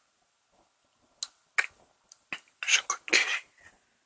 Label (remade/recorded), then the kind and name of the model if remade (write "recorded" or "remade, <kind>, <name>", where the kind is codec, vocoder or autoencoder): recorded